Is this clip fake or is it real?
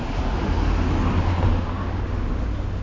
real